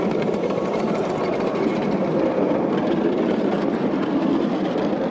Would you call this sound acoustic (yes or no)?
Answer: yes